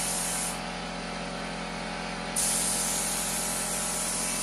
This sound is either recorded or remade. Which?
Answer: recorded